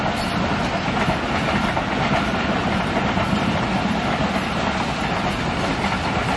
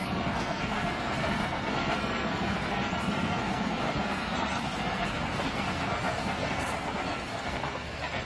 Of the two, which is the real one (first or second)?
first